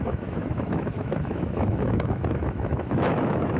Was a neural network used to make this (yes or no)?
yes